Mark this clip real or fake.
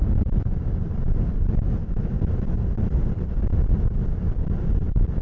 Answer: real